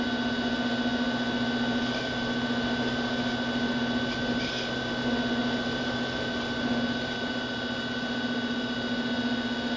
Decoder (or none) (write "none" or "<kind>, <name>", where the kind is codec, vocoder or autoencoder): none